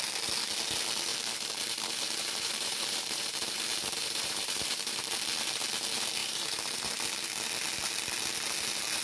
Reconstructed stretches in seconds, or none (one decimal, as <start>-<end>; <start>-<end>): 1.1-5.0; 6.2-6.9